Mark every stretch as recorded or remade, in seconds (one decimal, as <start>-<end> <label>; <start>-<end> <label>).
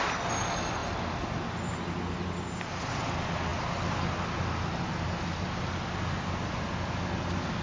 0.0-7.6 recorded